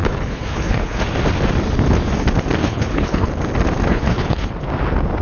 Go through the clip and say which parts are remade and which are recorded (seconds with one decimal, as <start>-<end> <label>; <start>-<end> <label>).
0.0-1.0 remade; 1.0-2.6 recorded; 2.6-3.3 remade; 3.3-3.9 recorded; 3.9-4.5 remade; 4.5-5.2 recorded